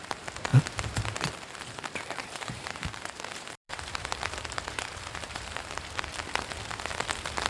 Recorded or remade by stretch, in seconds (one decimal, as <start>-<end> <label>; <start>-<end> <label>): 0.0-2.2 recorded; 2.2-5.9 remade; 5.9-7.5 recorded